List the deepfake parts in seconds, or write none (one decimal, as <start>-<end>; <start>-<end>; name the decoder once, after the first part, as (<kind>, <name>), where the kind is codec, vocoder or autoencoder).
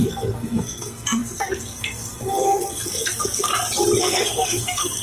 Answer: 0.0-3.5 (codec, SNAC); 4.0-5.0